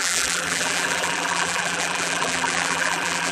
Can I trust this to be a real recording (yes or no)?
no